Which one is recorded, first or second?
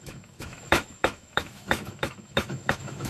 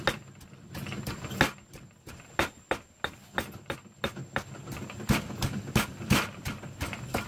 second